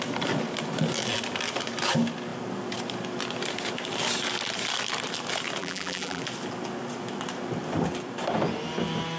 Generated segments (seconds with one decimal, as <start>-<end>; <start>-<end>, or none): 5.6-6.2